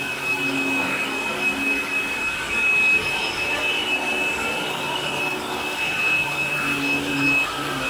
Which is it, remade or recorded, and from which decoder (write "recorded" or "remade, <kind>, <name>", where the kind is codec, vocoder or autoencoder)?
remade, codec, DAC